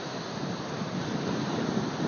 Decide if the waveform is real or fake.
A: real